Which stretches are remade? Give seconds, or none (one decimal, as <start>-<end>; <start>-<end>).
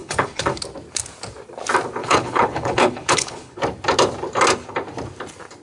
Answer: 0.0-0.6; 2.0-3.6